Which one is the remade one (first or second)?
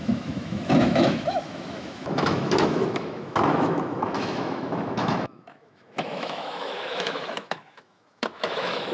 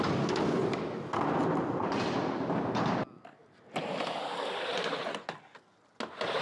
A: first